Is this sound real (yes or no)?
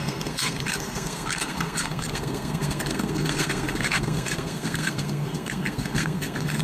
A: no